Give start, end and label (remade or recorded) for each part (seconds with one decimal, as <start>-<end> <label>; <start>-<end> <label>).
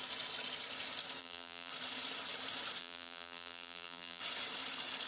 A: 0.0-1.2 recorded; 1.2-1.7 remade; 1.7-2.8 recorded; 2.8-4.2 remade; 4.2-5.1 recorded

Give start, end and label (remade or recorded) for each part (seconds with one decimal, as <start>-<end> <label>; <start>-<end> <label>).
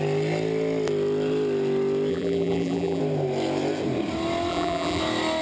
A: 0.0-2.1 recorded; 2.1-3.0 remade; 3.0-4.5 recorded; 4.5-5.0 remade; 5.0-5.4 recorded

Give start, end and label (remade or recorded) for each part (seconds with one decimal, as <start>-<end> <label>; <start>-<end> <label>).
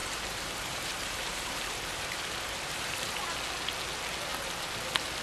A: 0.0-3.1 remade; 3.1-5.2 recorded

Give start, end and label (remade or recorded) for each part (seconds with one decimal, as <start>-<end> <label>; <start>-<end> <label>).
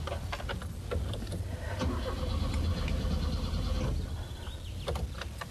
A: 0.0-2.7 recorded; 2.7-3.5 remade; 3.5-5.5 recorded